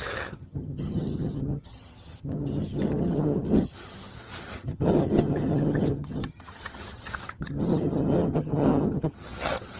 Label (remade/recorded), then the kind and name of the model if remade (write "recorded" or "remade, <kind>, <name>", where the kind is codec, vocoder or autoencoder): remade, vocoder, HiFi-GAN